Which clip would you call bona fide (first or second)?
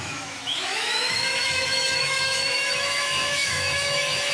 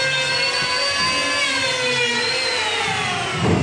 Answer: second